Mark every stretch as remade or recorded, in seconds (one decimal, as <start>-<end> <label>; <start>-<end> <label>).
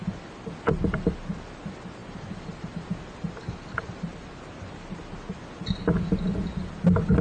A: 0.0-7.2 recorded